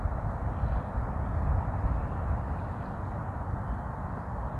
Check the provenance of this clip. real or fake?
real